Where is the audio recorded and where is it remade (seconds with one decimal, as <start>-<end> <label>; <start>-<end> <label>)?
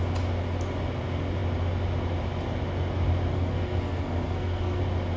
0.0-3.3 recorded; 3.3-4.8 remade; 4.8-5.2 recorded